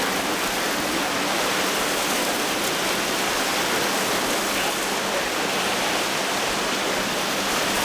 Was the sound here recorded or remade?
recorded